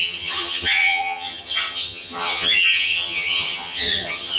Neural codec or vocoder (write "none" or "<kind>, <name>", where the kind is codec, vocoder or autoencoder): vocoder, HiFi-GAN